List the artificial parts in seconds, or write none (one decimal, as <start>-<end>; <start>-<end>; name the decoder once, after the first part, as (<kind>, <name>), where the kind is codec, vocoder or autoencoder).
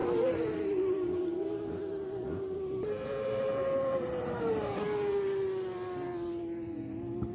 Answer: 0.0-4.4 (vocoder, BigVGAN v2)